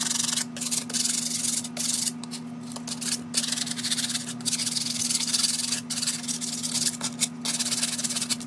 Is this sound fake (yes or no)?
no